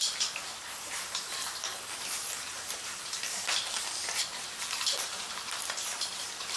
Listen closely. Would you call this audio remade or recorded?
remade